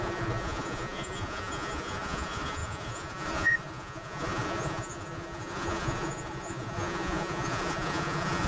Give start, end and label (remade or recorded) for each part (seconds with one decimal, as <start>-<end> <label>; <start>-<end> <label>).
0.0-8.5 remade